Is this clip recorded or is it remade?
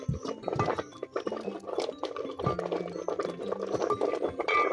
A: recorded